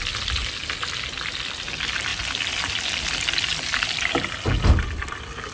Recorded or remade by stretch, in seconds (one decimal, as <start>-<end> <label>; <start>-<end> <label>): 0.0-5.5 recorded